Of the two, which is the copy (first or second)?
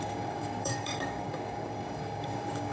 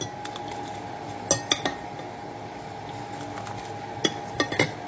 first